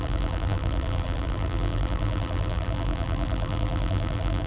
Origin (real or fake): fake